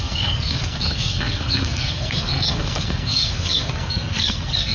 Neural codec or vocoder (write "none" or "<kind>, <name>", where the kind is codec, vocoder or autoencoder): codec, SNAC